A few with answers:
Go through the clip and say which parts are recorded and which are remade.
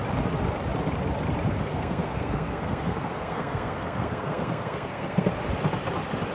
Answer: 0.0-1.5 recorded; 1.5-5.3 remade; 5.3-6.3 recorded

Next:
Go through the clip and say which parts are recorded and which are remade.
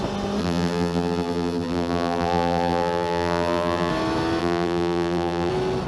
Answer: 0.0-0.4 recorded; 0.4-3.9 remade; 3.9-4.4 recorded; 4.4-5.5 remade; 5.5-5.9 recorded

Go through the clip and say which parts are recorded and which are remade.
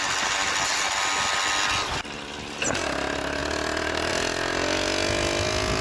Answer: 0.0-5.8 recorded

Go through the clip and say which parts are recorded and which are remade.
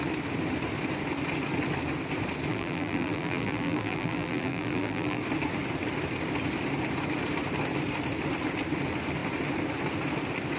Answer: 0.0-2.5 recorded; 2.5-5.2 remade; 5.2-10.6 recorded